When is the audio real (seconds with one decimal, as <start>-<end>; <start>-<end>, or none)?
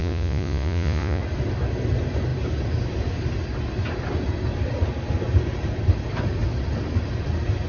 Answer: 1.2-7.7